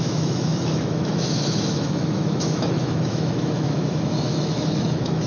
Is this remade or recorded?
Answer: remade